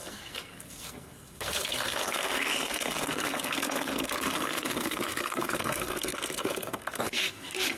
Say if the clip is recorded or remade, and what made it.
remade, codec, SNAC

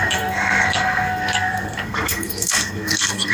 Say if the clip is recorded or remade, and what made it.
remade, codec, SNAC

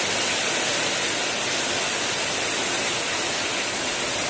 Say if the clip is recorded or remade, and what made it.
recorded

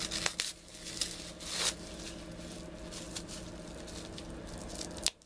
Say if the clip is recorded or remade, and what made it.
recorded